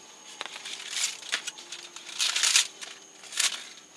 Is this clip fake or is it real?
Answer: real